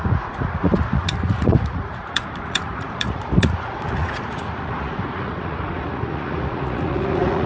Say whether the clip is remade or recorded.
remade